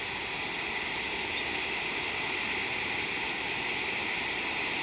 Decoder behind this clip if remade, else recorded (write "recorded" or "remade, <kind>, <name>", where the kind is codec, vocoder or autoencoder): recorded